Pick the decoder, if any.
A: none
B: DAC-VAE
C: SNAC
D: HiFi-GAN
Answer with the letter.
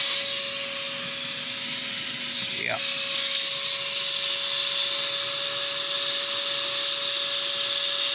A